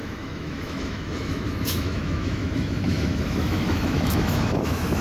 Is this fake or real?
fake